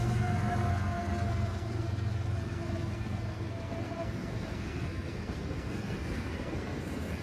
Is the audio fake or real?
fake